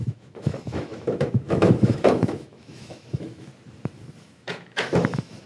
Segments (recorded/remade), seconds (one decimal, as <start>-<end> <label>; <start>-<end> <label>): 0.0-3.5 remade; 3.5-4.2 recorded; 4.2-5.5 remade